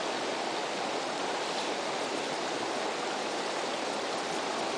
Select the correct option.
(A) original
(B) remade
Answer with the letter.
A